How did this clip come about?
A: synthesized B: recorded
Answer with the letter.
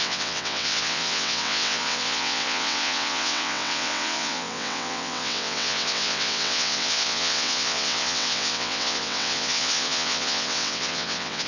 A